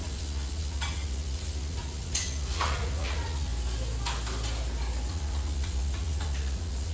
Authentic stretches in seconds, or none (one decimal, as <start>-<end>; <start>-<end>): 3.5-5.1